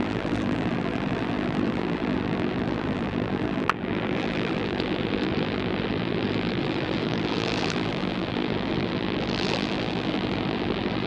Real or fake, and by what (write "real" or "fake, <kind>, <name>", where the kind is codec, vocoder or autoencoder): fake, vocoder, BigVGAN v2